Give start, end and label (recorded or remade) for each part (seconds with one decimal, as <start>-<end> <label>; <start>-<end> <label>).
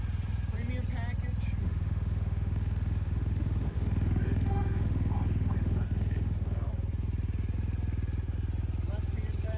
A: 0.0-1.6 recorded; 1.6-6.7 remade; 6.7-9.6 recorded